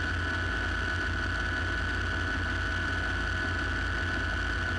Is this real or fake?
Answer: real